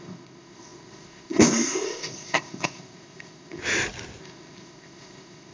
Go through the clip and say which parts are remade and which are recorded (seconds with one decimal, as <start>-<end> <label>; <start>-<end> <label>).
0.0-3.6 remade; 3.6-4.2 recorded; 4.2-5.5 remade